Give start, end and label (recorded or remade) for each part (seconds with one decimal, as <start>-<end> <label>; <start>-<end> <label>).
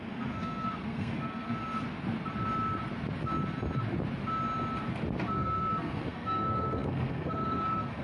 0.0-1.6 remade; 1.6-5.3 recorded; 5.3-8.0 remade